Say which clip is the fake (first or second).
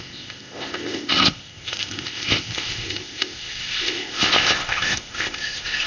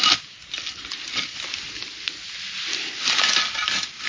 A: first